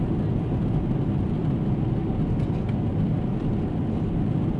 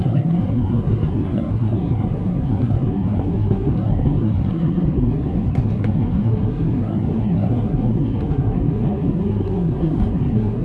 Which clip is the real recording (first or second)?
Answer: first